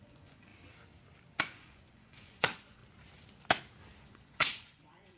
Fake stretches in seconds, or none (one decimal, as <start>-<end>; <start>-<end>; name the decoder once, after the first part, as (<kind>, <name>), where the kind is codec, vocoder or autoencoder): 0.0-0.5 (vocoder, Vocos); 1.4-2.8; 4.0-5.2